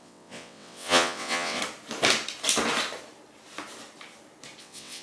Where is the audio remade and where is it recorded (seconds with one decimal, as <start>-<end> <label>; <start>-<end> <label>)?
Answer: 0.0-1.6 remade; 1.6-4.6 recorded; 4.6-5.0 remade